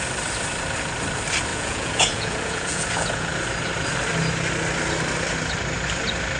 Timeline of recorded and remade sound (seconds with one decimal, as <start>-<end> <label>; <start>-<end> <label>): 0.0-1.5 recorded; 1.5-3.3 remade; 3.3-6.4 recorded